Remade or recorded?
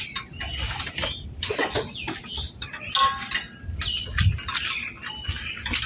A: recorded